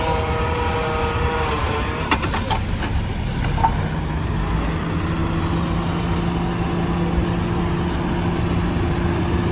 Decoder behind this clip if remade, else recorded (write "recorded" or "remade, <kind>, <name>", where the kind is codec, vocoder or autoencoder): recorded